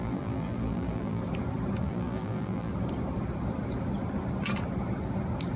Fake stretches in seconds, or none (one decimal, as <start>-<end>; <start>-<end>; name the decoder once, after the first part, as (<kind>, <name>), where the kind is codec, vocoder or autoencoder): 0.0-1.2 (vocoder, BigVGAN v2); 1.8-2.7